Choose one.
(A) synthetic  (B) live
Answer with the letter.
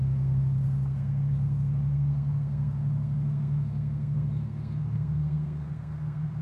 A